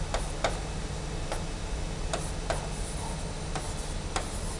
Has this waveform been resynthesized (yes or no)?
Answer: no